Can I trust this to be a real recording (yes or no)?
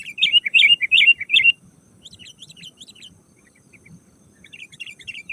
no